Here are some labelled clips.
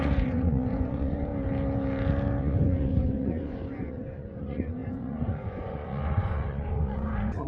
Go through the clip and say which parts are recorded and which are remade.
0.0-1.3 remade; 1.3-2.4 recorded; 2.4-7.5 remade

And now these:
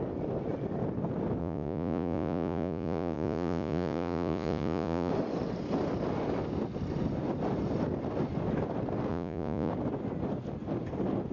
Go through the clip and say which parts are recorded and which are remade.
0.0-1.4 recorded; 1.4-5.1 remade; 5.1-9.1 recorded; 9.1-9.7 remade; 9.7-11.3 recorded

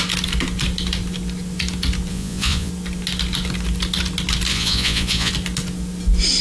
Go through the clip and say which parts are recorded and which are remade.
0.0-2.1 recorded; 2.1-2.7 remade; 2.7-4.5 recorded; 4.5-5.3 remade; 5.3-6.4 recorded

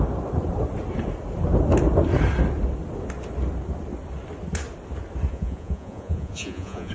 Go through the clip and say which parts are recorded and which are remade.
0.0-5.3 recorded; 5.3-6.9 remade

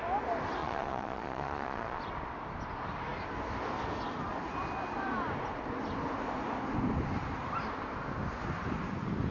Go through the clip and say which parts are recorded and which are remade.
0.0-0.6 recorded; 0.6-2.0 remade; 2.0-9.3 recorded

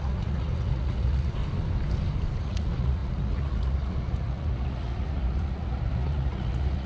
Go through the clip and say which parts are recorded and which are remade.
0.0-1.4 remade; 1.4-2.4 recorded; 2.4-6.9 remade

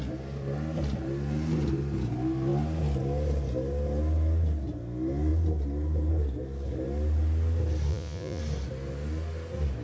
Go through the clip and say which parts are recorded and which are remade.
0.0-7.9 recorded; 7.9-8.4 remade; 8.4-9.8 recorded